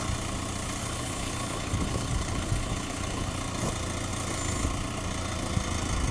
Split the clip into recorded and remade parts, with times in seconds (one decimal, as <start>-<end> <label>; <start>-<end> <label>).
0.0-0.8 recorded; 0.8-3.3 remade; 3.3-6.1 recorded